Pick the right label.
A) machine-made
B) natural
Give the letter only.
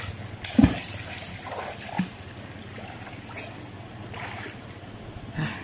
B